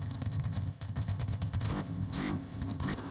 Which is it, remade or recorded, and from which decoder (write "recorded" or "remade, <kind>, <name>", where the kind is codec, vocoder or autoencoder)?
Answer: remade, codec, ZipCodec